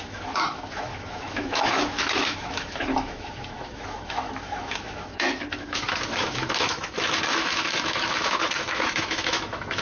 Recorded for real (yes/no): no